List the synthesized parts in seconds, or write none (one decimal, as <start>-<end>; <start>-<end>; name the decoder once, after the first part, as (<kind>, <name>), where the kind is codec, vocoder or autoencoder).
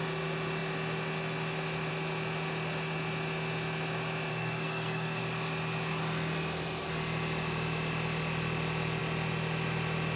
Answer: 4.3-5.2 (codec, SNAC)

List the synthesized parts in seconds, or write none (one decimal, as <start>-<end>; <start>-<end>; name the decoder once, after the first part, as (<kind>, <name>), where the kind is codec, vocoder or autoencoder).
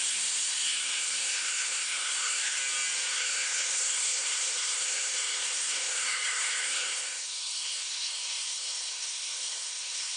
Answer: 0.0-2.6 (codec, SNAC); 3.1-10.2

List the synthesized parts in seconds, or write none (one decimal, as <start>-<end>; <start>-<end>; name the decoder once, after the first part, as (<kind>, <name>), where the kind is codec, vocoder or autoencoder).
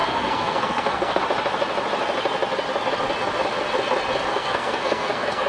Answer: 0.0-1.2 (codec, SNAC); 4.3-5.5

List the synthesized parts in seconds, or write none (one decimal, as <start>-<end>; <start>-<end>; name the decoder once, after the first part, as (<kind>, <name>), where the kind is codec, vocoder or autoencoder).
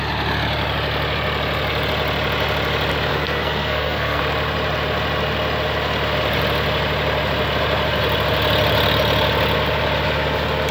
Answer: 3.1-4.2 (codec, SNAC)